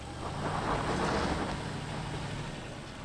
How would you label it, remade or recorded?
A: recorded